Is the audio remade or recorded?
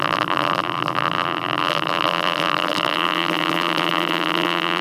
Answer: remade